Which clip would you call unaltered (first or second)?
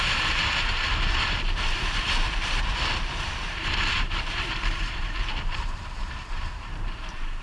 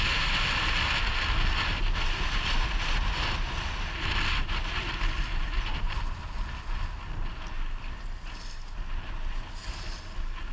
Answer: second